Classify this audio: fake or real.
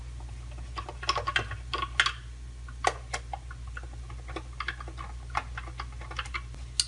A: real